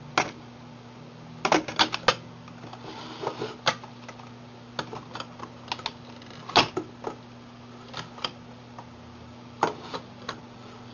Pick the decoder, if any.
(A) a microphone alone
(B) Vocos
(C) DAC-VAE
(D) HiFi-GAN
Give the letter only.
A